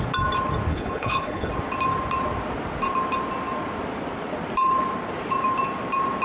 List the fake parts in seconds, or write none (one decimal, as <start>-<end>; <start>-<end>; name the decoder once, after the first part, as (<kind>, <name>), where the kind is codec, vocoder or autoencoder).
0.7-1.5 (codec, HILCodec)